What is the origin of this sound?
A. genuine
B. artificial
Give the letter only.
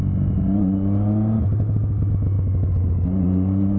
A